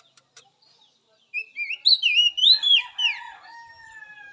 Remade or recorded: recorded